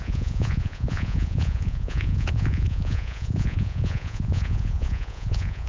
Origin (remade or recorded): remade